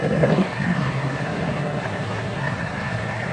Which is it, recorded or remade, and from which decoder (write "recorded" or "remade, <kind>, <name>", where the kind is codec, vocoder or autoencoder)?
remade, codec, SNAC